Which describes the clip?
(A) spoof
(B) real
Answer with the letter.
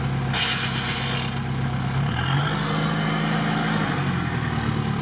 B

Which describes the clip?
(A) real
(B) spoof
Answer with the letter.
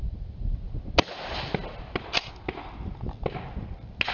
A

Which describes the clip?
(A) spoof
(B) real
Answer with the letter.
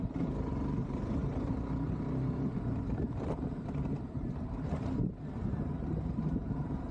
A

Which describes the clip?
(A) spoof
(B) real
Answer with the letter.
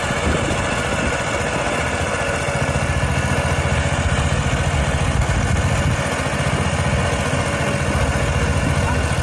B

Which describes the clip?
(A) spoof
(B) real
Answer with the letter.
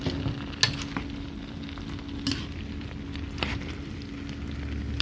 B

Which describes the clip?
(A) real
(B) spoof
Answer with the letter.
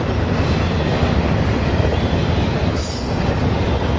A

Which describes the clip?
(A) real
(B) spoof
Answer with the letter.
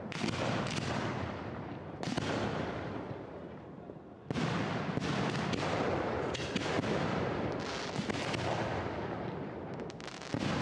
A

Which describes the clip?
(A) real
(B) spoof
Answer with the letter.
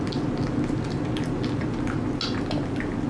A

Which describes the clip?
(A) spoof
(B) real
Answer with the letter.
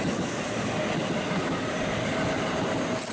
B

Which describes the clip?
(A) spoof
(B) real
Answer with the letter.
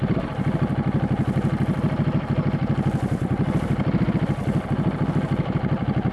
B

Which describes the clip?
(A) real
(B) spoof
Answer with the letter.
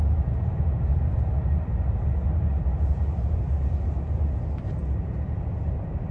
A